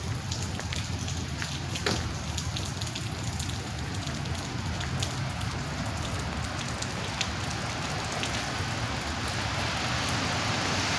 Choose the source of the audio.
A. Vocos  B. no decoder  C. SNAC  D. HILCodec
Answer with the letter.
B